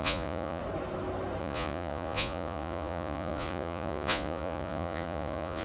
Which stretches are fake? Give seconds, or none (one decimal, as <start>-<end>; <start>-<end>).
0.0-0.6; 1.4-5.6